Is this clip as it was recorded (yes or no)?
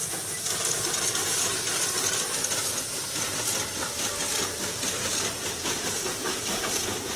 yes